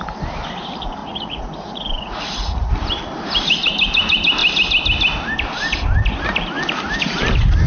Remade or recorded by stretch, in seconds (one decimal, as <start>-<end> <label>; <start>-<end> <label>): 0.0-1.0 recorded; 1.0-2.7 remade; 2.7-7.7 recorded